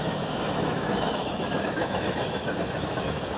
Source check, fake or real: fake